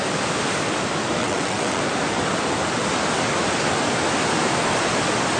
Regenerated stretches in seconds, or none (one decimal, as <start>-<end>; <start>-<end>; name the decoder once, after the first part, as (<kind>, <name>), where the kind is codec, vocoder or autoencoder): 1.2-1.8 (vocoder, WaveNeXt)